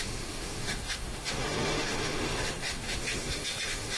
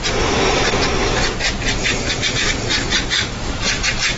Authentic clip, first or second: second